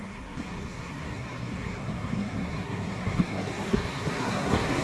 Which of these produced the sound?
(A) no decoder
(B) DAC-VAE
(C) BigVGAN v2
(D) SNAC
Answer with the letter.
D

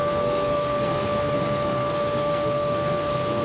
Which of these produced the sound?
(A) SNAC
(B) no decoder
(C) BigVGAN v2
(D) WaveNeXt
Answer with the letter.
A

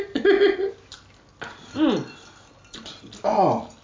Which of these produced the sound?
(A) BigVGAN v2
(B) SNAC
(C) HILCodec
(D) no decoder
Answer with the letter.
D